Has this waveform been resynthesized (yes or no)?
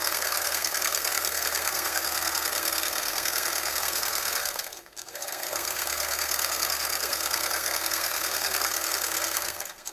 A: yes